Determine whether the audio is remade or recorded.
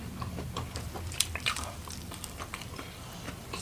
remade